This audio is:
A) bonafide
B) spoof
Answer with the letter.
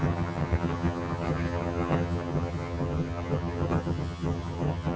B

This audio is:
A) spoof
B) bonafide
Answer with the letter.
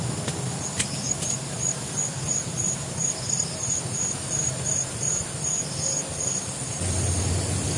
B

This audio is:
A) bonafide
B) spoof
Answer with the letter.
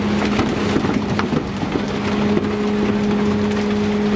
A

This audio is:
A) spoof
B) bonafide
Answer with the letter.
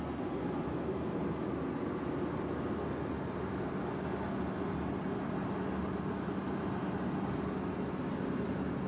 B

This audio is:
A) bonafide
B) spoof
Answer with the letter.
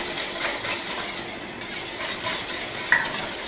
A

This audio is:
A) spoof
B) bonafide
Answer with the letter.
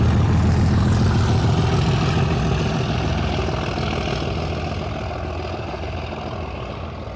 B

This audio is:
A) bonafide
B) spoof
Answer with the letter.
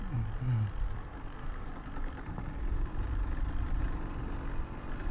A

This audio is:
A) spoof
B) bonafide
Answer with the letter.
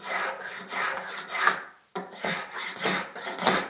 B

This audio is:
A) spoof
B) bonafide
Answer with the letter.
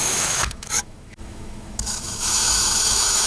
A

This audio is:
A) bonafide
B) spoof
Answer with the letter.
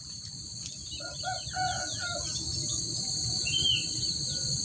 A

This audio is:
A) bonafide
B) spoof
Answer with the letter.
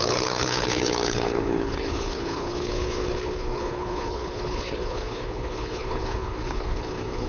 B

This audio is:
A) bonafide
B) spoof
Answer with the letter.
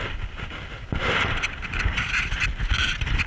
A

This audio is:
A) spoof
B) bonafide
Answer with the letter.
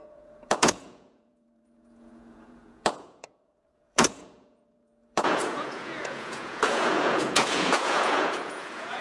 A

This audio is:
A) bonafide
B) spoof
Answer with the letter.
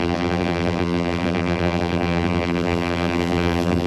B